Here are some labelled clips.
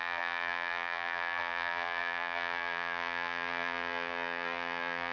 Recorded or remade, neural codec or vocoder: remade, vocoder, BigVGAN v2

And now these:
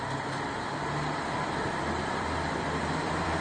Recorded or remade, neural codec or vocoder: remade, vocoder, BigVGAN v2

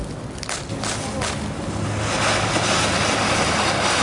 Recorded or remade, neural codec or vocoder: recorded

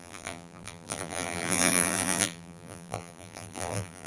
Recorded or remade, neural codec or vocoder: remade, vocoder, BigVGAN v2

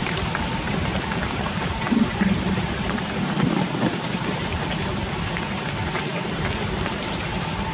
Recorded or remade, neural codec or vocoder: remade, vocoder, BigVGAN v2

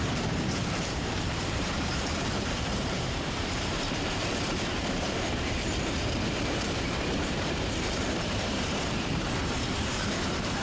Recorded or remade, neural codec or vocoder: remade, vocoder, BigVGAN v2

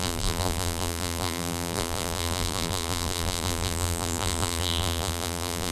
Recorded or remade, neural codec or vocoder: remade, vocoder, BigVGAN v2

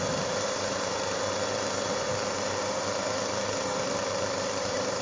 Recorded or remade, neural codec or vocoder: remade, vocoder, BigVGAN v2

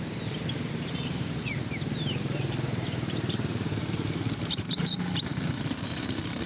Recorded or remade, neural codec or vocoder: remade, vocoder, BigVGAN v2